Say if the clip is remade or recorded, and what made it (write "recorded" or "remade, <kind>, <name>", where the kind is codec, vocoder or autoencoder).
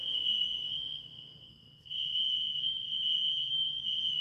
remade, codec, SNAC